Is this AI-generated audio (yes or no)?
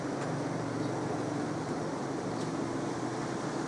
no